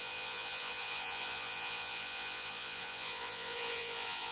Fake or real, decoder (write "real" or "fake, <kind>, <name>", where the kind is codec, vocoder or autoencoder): fake, vocoder, Vocos